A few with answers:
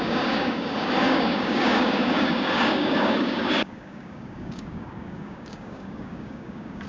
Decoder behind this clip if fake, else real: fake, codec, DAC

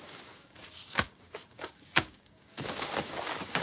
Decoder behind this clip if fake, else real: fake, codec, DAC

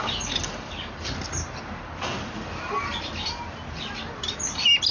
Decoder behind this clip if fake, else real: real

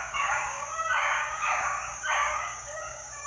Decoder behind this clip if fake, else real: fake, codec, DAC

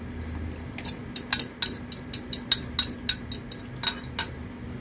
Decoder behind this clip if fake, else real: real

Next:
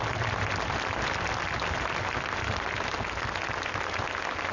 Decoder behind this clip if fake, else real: real